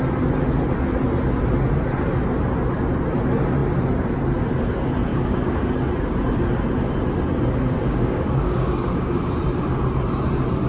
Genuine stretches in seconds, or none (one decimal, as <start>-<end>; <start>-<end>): 0.0-5.1; 5.7-7.8; 9.1-10.7

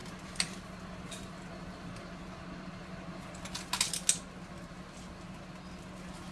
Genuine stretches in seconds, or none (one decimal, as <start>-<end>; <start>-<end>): 0.0-6.3

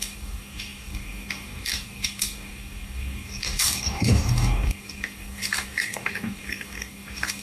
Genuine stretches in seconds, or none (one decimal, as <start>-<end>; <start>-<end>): none

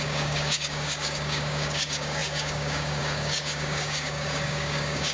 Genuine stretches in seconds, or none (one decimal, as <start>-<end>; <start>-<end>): none

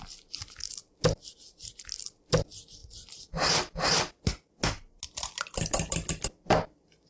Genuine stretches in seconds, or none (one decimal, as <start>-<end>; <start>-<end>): 0.0-7.1

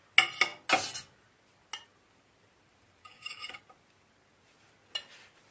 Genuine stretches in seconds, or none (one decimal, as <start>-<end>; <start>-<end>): 0.0-3.0; 3.6-5.5